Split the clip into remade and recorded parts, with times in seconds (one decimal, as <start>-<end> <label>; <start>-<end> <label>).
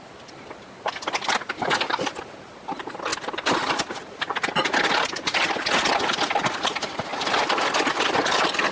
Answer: 0.0-8.7 recorded